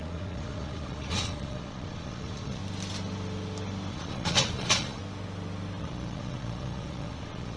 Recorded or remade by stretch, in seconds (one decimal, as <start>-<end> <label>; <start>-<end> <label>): 0.0-2.6 remade; 2.6-3.9 recorded; 3.9-5.0 remade; 5.0-5.8 recorded; 5.8-7.6 remade